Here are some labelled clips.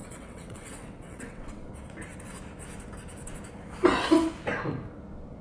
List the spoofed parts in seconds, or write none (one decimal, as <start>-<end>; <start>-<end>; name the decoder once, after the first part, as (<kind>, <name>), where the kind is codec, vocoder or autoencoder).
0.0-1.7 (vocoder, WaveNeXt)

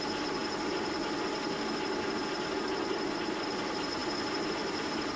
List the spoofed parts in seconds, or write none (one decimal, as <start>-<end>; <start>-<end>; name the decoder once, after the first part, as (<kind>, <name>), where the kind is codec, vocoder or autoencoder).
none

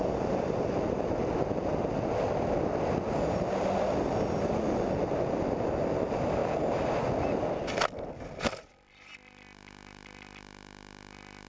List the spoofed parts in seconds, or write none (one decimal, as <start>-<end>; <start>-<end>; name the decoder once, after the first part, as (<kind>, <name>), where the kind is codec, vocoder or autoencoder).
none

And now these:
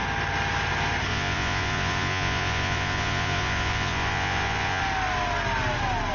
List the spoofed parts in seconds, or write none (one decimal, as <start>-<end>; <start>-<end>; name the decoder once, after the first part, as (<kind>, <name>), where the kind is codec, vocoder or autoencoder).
1.1-4.8 (vocoder, Vocos)

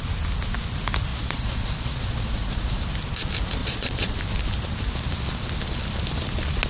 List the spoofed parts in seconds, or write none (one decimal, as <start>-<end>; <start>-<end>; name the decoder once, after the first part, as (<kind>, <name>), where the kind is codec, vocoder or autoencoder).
1.1-2.8 (vocoder, Vocos); 3.6-4.2